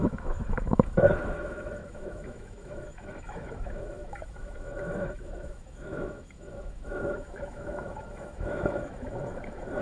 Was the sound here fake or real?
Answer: fake